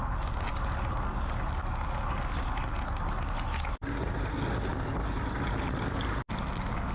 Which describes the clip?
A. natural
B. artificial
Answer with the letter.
A